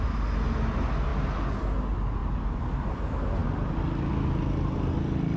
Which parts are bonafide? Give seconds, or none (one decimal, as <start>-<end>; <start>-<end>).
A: 0.0-5.4